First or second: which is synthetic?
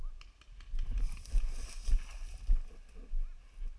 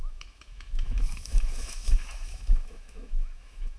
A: second